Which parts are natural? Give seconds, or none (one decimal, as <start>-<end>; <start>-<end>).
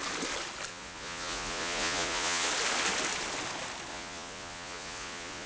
0.0-0.7; 2.5-3.9